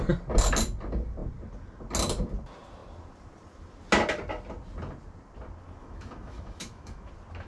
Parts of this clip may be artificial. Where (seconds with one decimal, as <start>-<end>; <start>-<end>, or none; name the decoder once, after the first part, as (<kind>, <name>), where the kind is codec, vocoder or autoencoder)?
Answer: 5.8-7.1 (autoencoder, DAC-VAE)